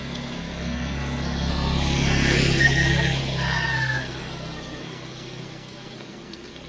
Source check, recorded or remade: remade